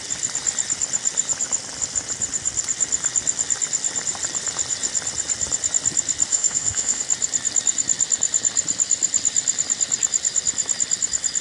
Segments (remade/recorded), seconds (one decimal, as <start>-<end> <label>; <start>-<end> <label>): 0.0-6.3 recorded; 6.3-7.0 remade; 7.0-11.4 recorded